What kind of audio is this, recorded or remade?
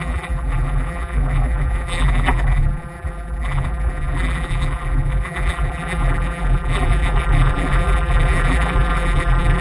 remade